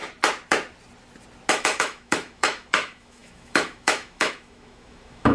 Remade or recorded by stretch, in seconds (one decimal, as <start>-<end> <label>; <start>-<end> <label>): 0.0-1.5 recorded; 1.5-5.3 remade